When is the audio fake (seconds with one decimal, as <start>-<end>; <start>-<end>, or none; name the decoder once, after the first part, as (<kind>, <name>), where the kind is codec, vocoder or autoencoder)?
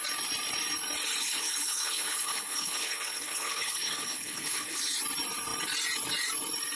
1.2-5.0 (codec, HILCodec)